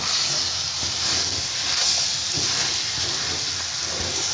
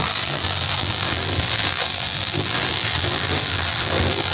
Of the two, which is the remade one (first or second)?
second